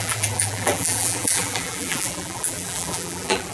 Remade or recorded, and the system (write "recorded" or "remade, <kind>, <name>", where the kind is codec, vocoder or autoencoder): remade, vocoder, BigVGAN v2